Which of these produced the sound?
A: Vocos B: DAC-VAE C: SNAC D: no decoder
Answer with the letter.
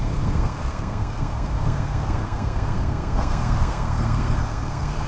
C